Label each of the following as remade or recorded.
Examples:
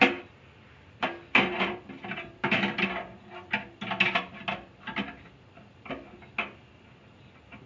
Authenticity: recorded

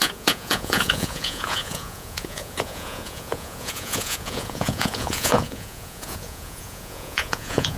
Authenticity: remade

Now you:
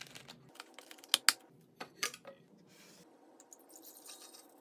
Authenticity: recorded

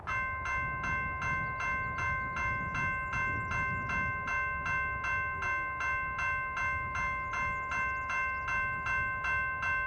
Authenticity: recorded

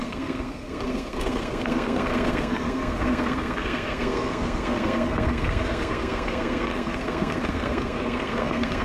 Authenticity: remade